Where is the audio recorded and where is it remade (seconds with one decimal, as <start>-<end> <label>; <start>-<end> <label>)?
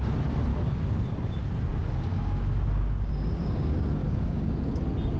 0.0-0.5 recorded; 0.5-1.0 remade; 1.0-1.7 recorded; 1.7-4.8 remade; 4.8-5.2 recorded